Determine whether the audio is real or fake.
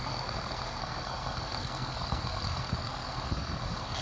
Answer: fake